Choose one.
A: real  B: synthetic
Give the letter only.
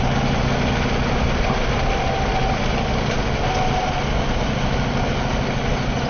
A